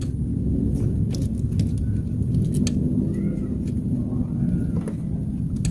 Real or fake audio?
real